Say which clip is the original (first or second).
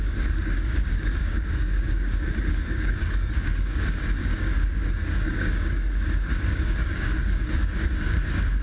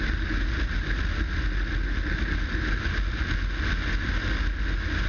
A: second